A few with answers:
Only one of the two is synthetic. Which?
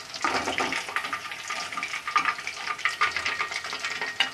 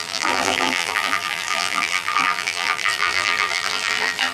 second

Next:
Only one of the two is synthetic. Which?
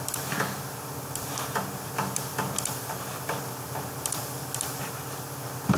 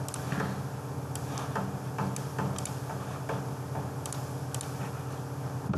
first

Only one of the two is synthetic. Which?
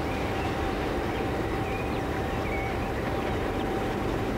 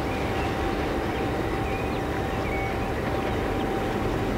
first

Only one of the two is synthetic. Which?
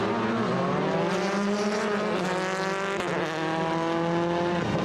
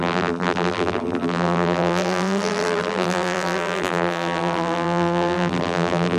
second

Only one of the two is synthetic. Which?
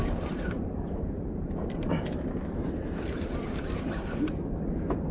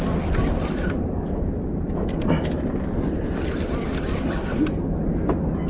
first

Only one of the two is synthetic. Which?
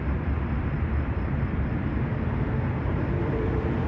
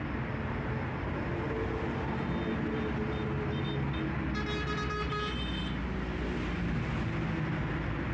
first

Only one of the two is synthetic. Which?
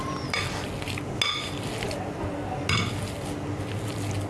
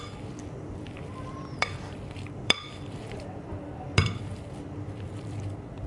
second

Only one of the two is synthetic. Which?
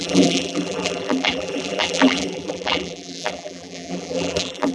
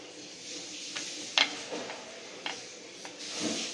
first